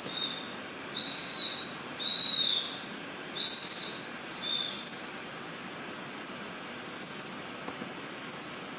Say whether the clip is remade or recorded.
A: recorded